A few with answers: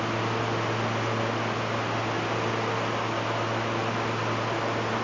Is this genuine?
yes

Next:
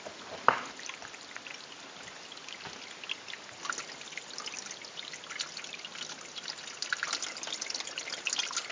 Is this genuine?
yes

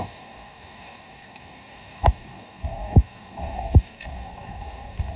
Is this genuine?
no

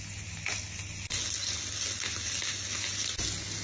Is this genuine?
yes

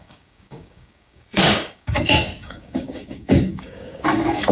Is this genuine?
no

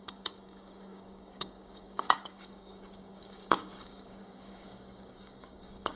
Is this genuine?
no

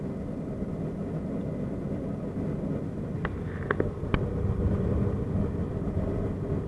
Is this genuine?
yes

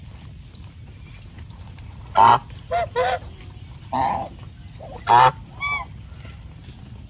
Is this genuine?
yes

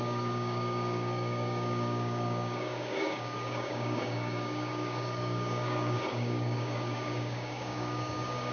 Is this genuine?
no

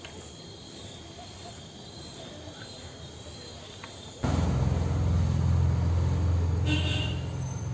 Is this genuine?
yes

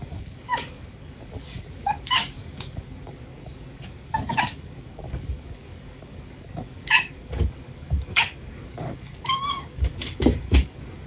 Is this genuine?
no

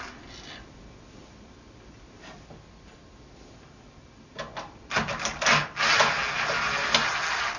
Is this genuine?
yes